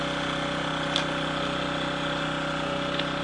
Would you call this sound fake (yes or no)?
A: no